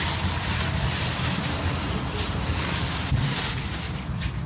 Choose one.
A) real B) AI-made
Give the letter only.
A